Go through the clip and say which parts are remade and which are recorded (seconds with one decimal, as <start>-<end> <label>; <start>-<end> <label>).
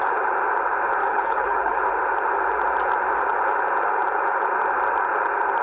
0.0-1.0 recorded; 1.0-1.8 remade; 1.8-5.6 recorded